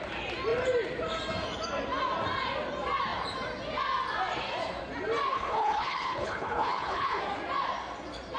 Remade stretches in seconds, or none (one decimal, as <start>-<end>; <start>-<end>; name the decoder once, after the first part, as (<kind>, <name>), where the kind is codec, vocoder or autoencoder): 5.3-7.2 (codec, HILCodec)